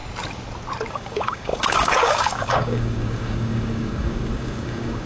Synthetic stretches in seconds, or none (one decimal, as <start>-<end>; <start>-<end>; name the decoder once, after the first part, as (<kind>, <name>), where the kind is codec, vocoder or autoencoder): 0.9-5.1 (codec, DAC)